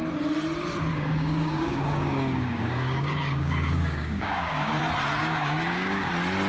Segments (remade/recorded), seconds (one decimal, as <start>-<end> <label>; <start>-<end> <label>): 0.0-0.9 recorded; 0.9-4.8 remade; 4.8-5.2 recorded; 5.2-6.1 remade; 6.1-6.5 recorded